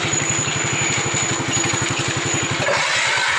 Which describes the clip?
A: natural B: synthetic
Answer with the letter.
A